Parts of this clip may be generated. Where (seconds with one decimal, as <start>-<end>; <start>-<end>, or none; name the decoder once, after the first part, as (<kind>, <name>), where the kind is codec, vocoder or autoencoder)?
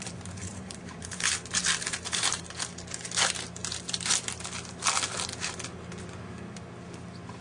0.5-2.4 (vocoder, BigVGAN v2)